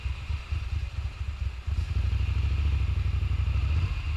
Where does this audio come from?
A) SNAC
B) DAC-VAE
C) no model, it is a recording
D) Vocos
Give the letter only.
C